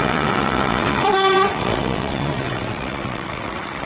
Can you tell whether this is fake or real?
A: fake